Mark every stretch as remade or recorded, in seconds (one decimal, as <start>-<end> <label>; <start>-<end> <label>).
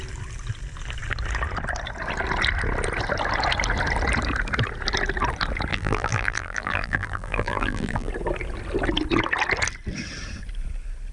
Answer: 0.0-5.7 recorded; 5.7-8.1 remade; 8.1-11.1 recorded